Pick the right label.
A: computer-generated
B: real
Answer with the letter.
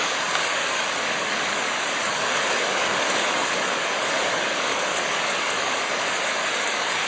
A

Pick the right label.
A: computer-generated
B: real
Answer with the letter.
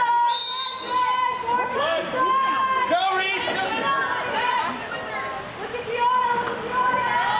B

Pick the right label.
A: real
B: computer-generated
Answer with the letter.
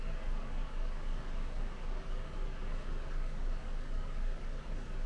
B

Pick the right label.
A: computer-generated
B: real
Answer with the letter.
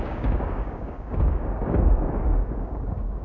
A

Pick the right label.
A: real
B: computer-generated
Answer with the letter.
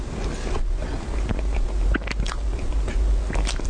A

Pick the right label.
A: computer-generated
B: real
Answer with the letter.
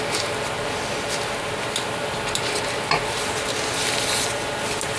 B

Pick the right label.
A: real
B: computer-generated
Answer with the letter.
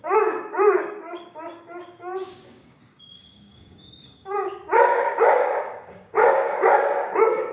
B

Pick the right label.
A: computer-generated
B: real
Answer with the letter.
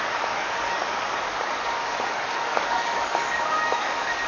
A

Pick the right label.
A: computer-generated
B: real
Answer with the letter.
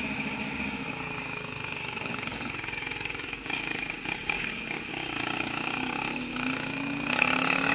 A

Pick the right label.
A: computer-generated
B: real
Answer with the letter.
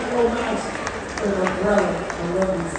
B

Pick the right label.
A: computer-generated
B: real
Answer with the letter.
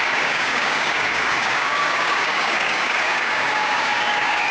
A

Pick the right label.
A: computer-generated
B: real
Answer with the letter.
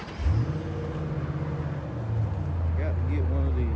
B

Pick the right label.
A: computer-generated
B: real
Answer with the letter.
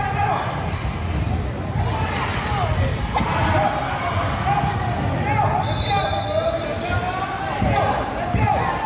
B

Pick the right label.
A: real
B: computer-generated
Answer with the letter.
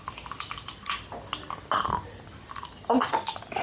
A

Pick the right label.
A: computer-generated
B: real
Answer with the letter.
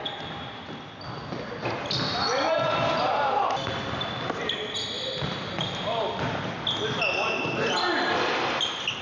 B